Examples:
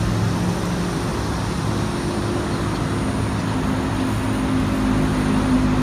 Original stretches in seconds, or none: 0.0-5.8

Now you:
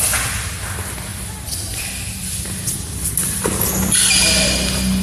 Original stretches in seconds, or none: 0.0-1.1; 3.4-5.0

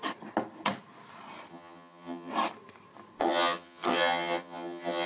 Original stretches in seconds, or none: 0.0-1.5; 2.3-3.2

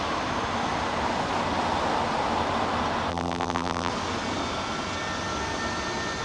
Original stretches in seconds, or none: 0.0-3.1; 3.9-6.2

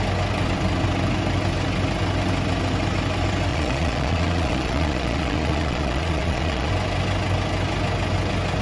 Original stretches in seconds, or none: 0.0-3.5; 6.7-8.6

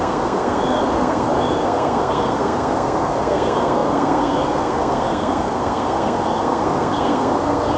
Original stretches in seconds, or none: none

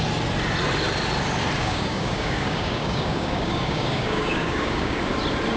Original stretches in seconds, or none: 0.0-1.6; 5.0-5.6

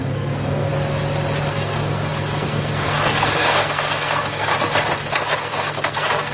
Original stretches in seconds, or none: 0.7-1.5; 4.5-5.3